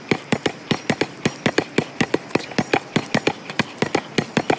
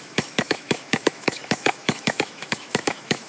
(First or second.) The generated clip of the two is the second